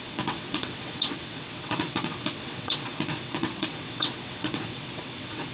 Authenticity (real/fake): fake